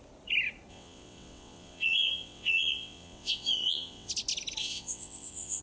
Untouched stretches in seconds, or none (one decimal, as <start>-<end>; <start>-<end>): 0.0-0.7; 4.1-4.6